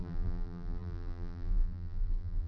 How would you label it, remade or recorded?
remade